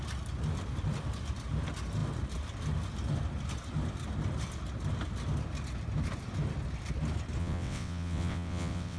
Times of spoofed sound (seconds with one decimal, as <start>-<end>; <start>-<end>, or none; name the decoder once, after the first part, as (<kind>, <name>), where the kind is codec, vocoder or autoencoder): 7.4-9.0 (vocoder, WaveNeXt)